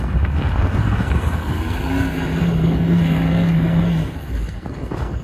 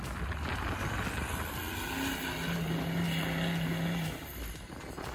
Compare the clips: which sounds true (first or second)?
second